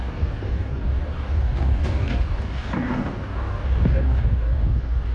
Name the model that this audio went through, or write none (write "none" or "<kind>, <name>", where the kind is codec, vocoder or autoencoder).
codec, DAC